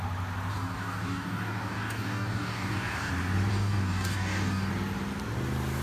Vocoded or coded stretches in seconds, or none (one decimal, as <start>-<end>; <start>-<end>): 0.5-3.1; 3.5-4.7